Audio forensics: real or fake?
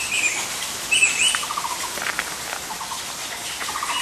real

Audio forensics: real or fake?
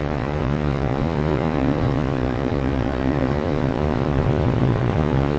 fake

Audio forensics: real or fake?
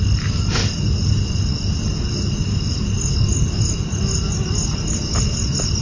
real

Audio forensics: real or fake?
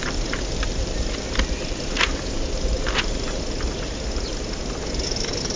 real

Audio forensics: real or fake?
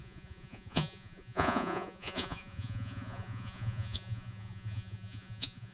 fake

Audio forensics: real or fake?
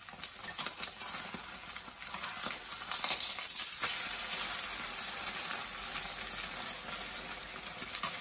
real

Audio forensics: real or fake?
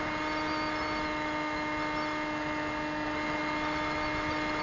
real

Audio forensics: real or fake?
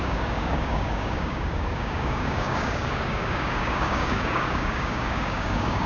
fake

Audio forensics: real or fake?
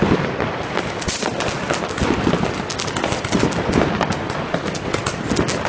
real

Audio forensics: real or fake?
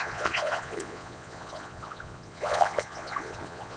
fake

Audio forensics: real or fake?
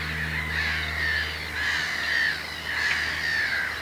real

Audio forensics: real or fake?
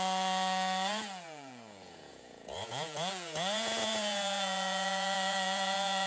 fake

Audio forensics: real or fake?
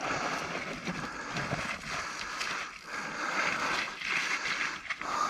real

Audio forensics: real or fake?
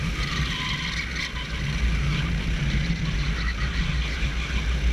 real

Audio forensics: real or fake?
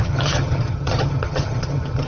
fake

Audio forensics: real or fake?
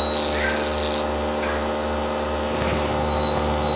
real